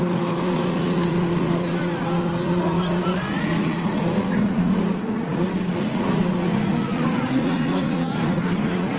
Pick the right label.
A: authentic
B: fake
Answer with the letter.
B